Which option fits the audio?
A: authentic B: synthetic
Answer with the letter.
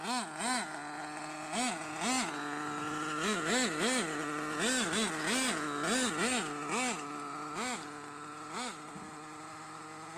A